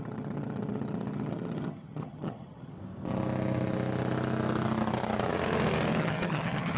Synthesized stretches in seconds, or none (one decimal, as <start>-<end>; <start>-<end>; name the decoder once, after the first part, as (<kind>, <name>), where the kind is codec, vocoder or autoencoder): 0.0-2.7 (vocoder, HiFi-GAN); 6.0-6.8